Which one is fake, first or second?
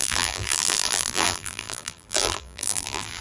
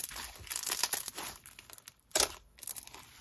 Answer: first